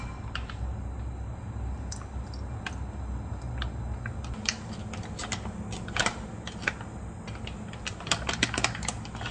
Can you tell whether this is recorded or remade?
recorded